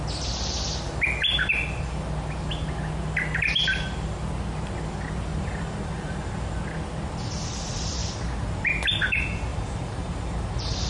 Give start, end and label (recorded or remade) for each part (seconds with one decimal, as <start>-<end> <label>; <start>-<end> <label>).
0.0-5.3 recorded; 5.3-6.3 remade; 6.3-9.5 recorded; 9.5-10.9 remade

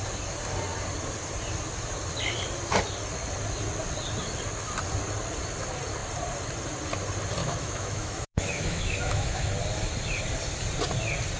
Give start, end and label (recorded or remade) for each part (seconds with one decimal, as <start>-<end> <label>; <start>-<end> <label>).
0.0-7.4 recorded; 7.4-9.5 remade; 9.5-11.4 recorded

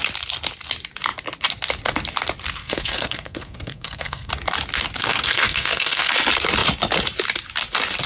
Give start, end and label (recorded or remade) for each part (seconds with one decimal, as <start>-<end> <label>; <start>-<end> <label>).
0.0-2.6 recorded; 2.6-4.3 remade; 4.3-5.0 recorded; 5.0-6.1 remade; 6.1-8.1 recorded